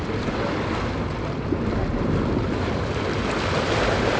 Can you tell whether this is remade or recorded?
recorded